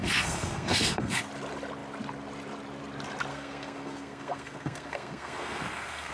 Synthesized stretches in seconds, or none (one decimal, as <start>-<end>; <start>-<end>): 0.0-1.2; 3.3-6.1